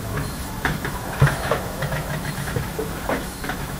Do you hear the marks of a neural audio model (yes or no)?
yes